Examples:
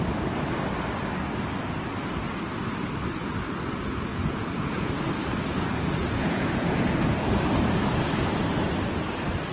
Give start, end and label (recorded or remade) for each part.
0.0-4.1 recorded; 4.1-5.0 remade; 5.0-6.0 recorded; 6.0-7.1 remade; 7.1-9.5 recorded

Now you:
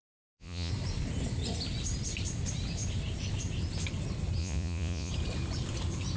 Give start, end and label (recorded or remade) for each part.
0.0-0.7 remade; 0.7-4.4 recorded; 4.4-5.1 remade; 5.1-6.2 recorded